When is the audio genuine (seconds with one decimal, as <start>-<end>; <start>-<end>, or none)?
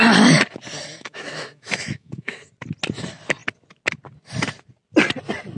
0.0-0.9; 2.5-5.6